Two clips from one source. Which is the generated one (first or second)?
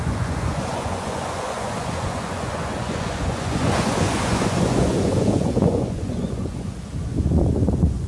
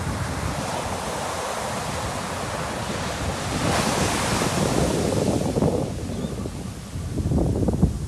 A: first